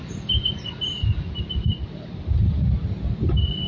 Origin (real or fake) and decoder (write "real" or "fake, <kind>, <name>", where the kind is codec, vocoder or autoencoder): real